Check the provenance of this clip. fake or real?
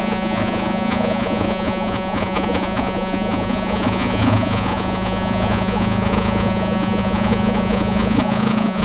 fake